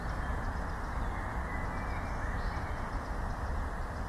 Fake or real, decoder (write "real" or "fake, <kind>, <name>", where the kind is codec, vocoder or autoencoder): real